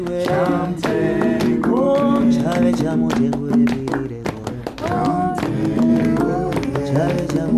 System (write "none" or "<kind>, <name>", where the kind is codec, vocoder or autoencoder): none